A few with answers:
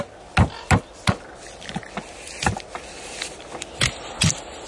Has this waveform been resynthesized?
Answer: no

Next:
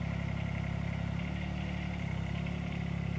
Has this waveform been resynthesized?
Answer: yes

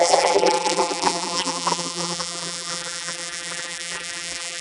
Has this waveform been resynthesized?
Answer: yes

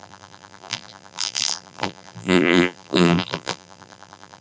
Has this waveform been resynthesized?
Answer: yes